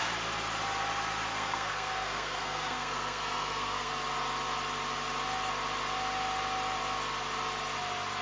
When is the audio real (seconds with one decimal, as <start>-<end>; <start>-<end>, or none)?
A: 0.0-1.3; 3.9-8.2